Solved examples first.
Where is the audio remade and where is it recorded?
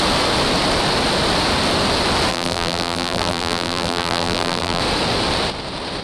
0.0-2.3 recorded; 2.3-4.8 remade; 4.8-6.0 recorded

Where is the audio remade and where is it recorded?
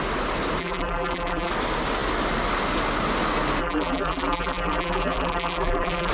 0.0-0.6 recorded; 0.6-1.5 remade; 1.5-3.6 recorded; 3.6-6.1 remade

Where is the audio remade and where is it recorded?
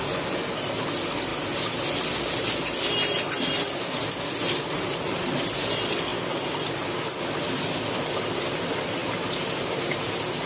0.0-10.5 recorded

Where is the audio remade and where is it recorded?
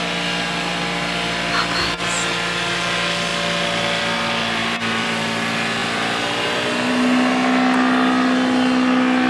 0.0-3.3 recorded; 3.3-4.0 remade; 4.0-4.6 recorded; 4.6-5.2 remade; 5.2-9.3 recorded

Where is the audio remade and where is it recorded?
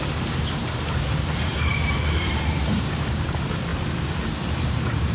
0.0-3.7 remade; 3.7-4.5 recorded; 4.5-5.1 remade